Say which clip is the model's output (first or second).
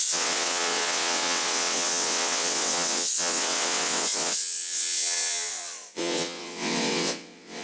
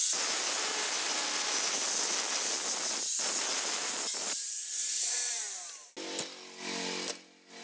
first